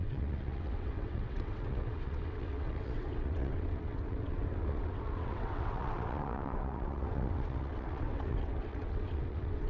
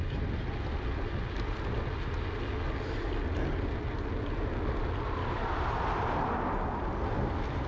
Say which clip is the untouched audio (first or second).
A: second